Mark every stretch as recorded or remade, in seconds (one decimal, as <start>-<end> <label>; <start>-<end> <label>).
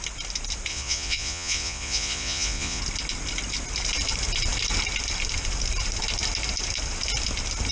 0.0-0.7 recorded; 0.7-2.8 remade; 2.8-7.7 recorded